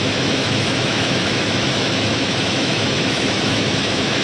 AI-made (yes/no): yes